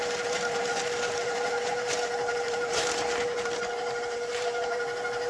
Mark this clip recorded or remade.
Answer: remade